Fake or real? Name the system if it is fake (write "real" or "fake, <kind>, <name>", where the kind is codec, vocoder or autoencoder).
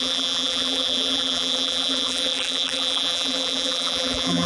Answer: fake, vocoder, BigVGAN v2